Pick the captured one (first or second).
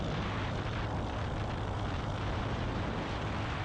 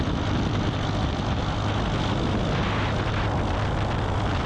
second